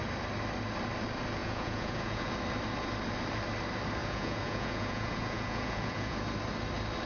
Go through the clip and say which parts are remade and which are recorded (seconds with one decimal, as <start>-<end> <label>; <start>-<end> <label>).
0.0-1.4 recorded; 1.4-2.3 remade; 2.3-4.0 recorded; 4.0-6.2 remade; 6.2-7.1 recorded